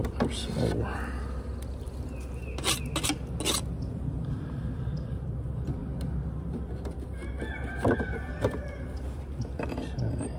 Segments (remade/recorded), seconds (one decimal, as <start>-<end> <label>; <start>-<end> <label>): 0.0-3.9 recorded; 3.9-5.8 remade; 5.8-6.4 recorded; 6.4-7.2 remade; 7.2-8.0 recorded; 8.0-10.4 remade